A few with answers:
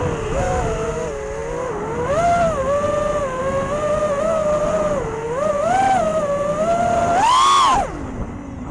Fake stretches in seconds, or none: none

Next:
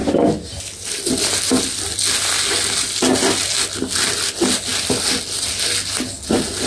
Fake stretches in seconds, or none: none

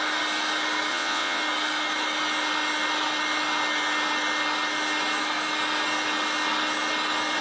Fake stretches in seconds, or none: 0.9-1.4 (vocoder, WaveNeXt)

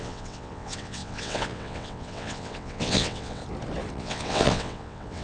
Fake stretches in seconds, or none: 0.0-3.4 (vocoder, WaveNeXt); 3.9-5.2

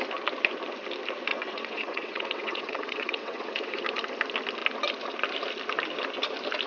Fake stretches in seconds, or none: 1.3-3.8 (vocoder, WaveNeXt)

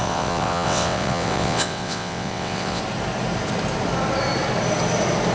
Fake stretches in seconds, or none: 0.0-2.8 (vocoder, WaveNeXt)

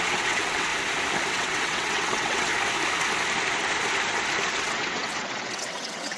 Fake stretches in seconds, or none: 0.0-0.7 (vocoder, WaveNeXt); 1.3-2.5; 4.6-6.2

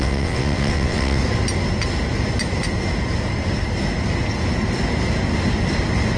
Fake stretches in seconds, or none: 0.0-1.2 (vocoder, WaveNeXt)